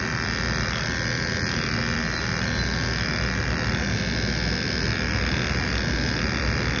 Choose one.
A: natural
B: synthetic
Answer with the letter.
A